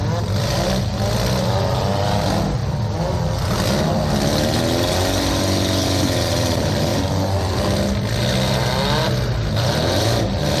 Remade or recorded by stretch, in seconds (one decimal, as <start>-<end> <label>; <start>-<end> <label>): 0.0-2.6 remade; 2.6-6.3 recorded; 6.3-6.9 remade; 6.9-10.0 recorded; 10.0-10.6 remade